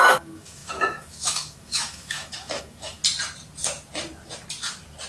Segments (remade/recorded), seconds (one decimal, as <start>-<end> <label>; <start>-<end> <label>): 0.0-3.0 remade; 3.0-5.1 recorded